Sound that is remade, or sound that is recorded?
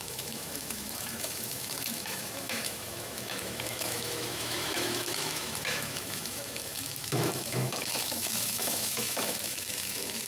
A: remade